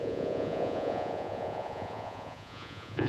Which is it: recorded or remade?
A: remade